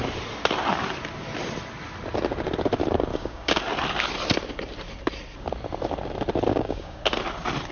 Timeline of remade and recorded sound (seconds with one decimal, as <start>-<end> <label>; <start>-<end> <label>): 0.0-3.1 recorded; 3.1-3.6 remade; 3.6-6.5 recorded; 6.5-7.0 remade; 7.0-7.7 recorded